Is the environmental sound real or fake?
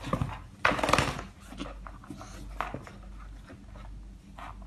real